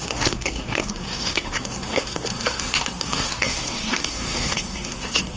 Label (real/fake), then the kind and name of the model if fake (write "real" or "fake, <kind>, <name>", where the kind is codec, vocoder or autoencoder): fake, codec, SNAC